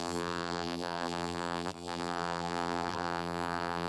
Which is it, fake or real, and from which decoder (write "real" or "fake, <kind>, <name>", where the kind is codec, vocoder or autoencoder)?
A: fake, vocoder, BigVGAN v2